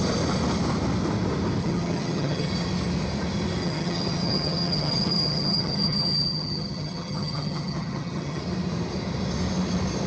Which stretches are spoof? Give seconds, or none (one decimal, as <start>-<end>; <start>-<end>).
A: 1.6-2.5; 3.6-8.4